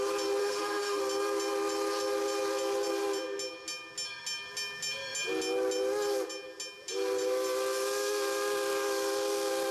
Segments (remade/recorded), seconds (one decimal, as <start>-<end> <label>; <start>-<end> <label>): 0.0-0.4 recorded; 0.4-1.0 remade; 1.0-9.7 recorded